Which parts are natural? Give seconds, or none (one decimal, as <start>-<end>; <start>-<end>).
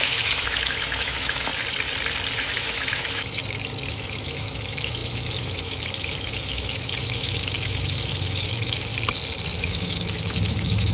1.5-2.4; 3.4-3.9; 8.9-9.6